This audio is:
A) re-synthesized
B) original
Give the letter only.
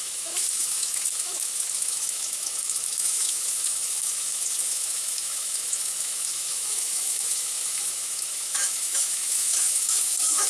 A